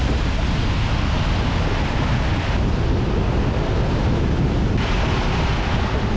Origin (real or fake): real